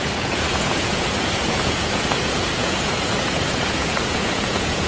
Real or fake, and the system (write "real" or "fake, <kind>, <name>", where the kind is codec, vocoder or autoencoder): fake, vocoder, Vocos